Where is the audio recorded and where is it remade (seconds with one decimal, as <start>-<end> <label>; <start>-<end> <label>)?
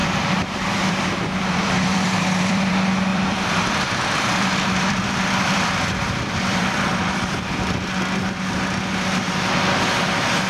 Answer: 0.0-2.7 remade; 2.7-3.1 recorded; 3.1-8.0 remade; 8.0-10.5 recorded